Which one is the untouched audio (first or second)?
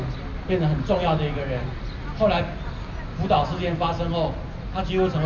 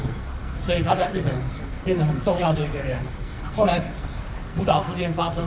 first